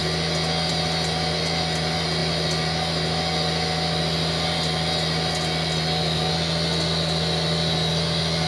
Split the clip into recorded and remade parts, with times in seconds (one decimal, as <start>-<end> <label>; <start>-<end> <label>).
0.0-8.5 recorded